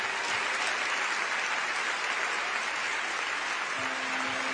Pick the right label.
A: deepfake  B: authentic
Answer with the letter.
B